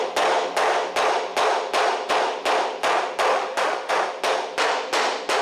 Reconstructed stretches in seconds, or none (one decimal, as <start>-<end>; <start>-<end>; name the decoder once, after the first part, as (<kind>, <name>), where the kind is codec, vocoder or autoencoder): 3.3-3.9 (autoencoder, DAC-VAE)